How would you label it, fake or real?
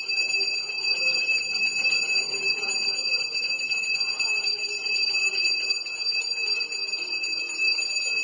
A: fake